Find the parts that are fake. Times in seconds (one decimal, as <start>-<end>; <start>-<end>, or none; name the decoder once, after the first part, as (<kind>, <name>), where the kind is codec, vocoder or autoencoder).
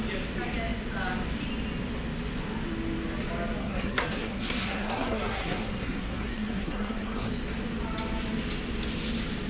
3.6-7.3 (codec, SNAC)